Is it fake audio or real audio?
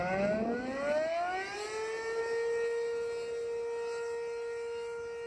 real